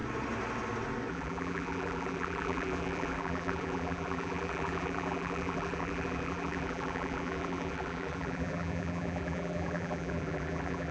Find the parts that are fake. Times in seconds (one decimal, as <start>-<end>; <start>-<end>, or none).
1.1-10.9